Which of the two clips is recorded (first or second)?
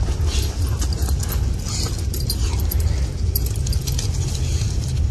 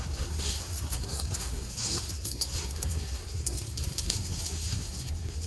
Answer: first